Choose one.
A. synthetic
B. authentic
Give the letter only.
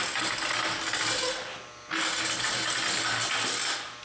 B